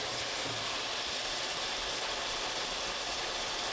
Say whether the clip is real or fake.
real